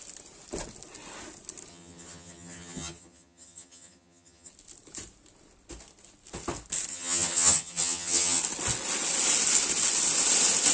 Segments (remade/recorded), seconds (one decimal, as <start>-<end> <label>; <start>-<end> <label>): 0.0-1.7 recorded; 1.7-4.5 remade; 4.5-6.9 recorded; 6.9-8.4 remade; 8.4-10.7 recorded